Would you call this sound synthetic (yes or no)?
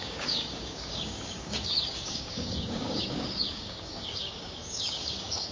yes